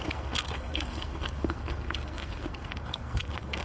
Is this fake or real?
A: fake